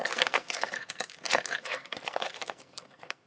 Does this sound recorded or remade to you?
remade